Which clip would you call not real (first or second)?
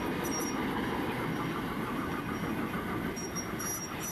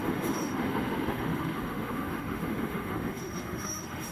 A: second